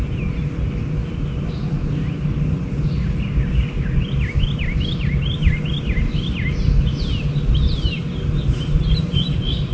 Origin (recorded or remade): recorded